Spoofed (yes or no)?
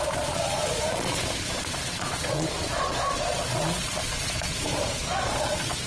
yes